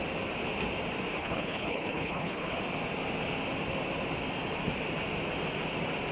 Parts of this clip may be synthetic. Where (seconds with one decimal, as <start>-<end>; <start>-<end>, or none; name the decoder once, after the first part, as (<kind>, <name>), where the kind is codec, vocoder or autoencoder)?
1.2-2.6 (codec, HILCodec)